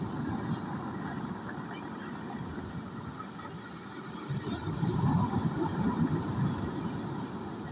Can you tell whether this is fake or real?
real